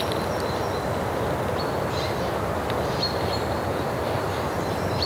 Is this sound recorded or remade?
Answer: recorded